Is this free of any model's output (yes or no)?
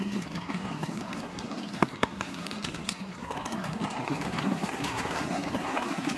no